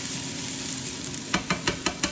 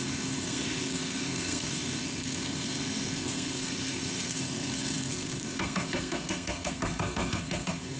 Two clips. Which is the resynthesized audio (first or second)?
second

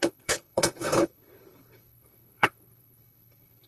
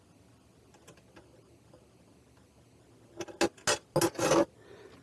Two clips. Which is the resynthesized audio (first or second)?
first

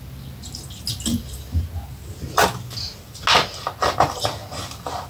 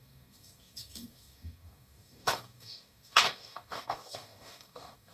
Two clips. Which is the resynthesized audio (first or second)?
second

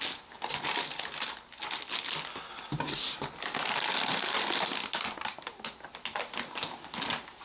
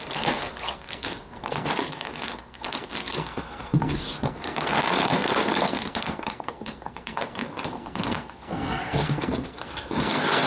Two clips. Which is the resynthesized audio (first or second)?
second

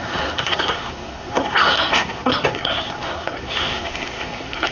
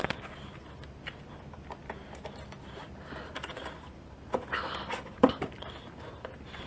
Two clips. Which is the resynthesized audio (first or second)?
first